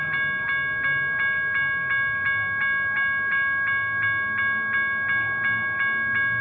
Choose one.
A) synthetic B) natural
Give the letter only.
B